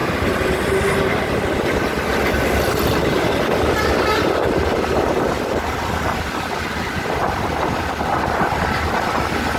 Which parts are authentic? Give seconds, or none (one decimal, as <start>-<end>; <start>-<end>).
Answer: 0.0-9.6